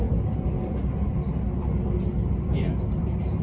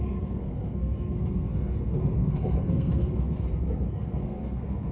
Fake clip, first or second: second